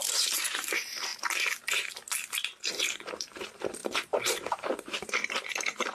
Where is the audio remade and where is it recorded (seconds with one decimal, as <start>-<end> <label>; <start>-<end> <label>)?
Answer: 0.0-1.1 remade; 1.1-2.7 recorded; 2.7-5.9 remade